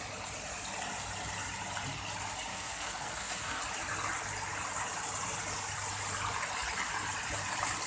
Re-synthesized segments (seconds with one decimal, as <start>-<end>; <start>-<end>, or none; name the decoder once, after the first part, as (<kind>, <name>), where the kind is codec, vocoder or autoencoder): 2.5-3.6 (codec, SNAC)